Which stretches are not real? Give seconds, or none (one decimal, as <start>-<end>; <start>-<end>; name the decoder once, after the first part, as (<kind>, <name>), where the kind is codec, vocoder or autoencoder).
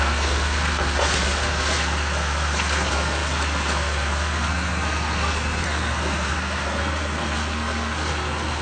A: 0.0-8.6 (codec, SNAC)